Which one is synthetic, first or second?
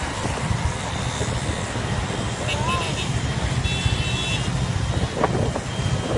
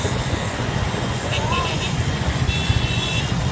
second